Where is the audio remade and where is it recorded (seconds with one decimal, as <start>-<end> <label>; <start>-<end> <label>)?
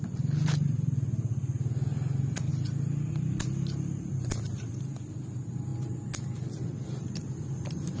0.0-8.0 recorded